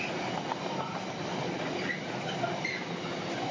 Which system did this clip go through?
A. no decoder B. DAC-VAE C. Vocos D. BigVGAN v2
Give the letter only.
A